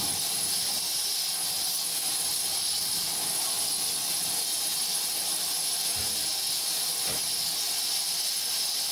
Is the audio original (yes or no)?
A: yes